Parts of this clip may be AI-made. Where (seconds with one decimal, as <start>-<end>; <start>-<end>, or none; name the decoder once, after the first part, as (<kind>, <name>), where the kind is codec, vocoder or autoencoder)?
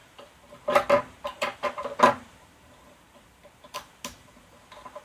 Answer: none